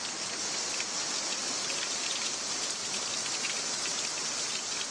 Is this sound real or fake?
real